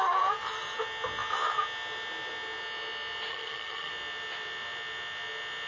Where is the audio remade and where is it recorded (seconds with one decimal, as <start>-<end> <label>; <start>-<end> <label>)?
0.0-3.3 recorded; 3.3-3.9 remade; 3.9-5.7 recorded